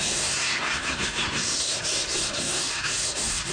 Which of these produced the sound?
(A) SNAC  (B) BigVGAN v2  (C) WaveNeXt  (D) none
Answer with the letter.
A